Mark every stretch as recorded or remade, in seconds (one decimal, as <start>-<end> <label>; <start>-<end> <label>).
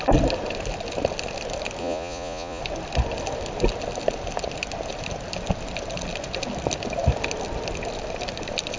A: 0.0-1.8 recorded; 1.8-2.6 remade; 2.6-8.8 recorded